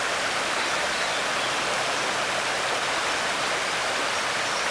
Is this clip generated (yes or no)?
yes